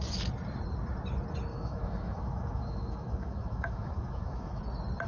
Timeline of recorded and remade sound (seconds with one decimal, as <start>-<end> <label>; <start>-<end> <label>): 0.0-1.5 recorded; 1.5-4.6 remade; 4.6-5.1 recorded